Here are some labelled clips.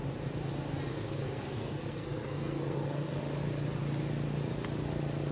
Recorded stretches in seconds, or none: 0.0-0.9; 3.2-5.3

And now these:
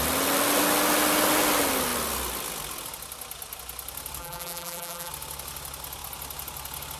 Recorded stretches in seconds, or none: 0.0-4.2; 5.1-7.0